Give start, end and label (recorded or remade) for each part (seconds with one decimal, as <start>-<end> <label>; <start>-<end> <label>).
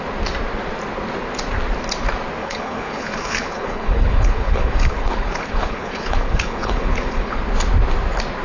0.0-2.4 recorded; 2.4-7.4 remade; 7.4-8.4 recorded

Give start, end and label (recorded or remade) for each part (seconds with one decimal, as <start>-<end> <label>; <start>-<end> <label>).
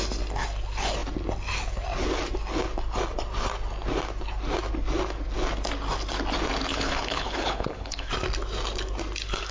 0.0-6.7 recorded; 6.7-8.1 remade; 8.1-9.5 recorded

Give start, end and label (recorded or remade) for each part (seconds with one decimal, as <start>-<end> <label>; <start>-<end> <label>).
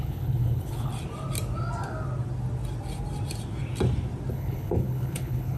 0.0-0.9 remade; 0.9-4.3 recorded; 4.3-5.6 remade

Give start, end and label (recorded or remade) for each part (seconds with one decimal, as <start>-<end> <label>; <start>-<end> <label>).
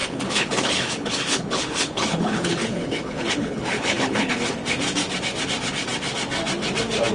0.0-4.3 remade; 4.3-7.1 recorded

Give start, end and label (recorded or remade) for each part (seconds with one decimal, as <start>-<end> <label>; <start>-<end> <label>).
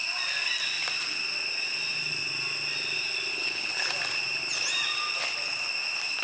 0.0-3.3 recorded; 3.3-3.9 remade; 3.9-6.2 recorded